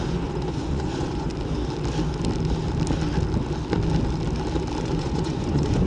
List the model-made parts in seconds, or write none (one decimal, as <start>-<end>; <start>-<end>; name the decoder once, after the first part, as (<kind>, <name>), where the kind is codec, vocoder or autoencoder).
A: 0.0-1.3 (vocoder, Vocos); 4.8-5.9